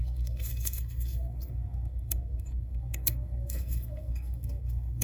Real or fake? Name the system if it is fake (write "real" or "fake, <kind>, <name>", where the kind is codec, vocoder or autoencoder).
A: fake, codec, SNAC